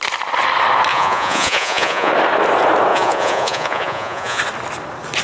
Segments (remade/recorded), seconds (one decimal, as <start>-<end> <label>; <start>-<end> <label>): 0.0-0.9 recorded; 0.9-2.1 remade; 2.1-2.9 recorded; 2.9-4.4 remade; 4.4-5.2 recorded